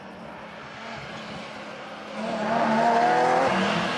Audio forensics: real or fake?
real